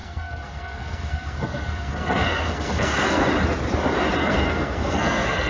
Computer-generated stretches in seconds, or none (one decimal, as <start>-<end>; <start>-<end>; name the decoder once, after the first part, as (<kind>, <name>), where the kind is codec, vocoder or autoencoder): 0.0-3.3 (codec, SNAC); 4.2-5.5